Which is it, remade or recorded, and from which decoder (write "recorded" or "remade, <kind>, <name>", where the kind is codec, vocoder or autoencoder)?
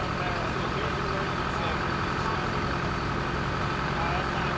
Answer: recorded